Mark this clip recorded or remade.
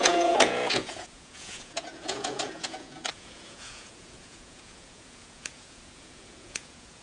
remade